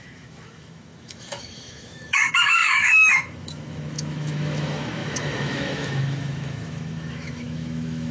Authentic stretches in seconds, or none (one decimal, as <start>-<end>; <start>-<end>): none